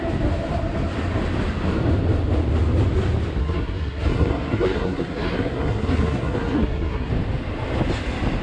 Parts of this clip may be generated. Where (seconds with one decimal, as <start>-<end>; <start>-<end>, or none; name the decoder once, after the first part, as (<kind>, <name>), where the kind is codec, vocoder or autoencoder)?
3.4-7.1 (codec, SNAC)

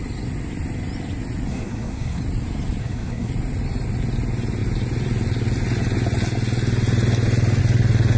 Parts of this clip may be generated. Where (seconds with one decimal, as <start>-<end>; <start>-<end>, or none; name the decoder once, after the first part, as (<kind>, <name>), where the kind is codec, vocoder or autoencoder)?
1.5-2.2 (codec, SNAC); 2.8-3.3

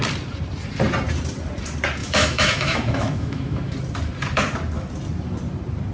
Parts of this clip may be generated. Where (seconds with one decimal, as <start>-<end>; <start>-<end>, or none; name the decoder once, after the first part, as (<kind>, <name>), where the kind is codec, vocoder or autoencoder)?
2.0-3.7 (autoencoder, DAC-VAE)